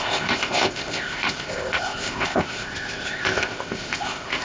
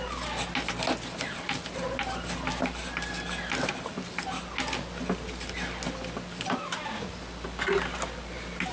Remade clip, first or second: first